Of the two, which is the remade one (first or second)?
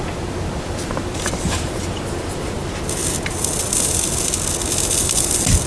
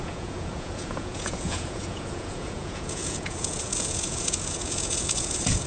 second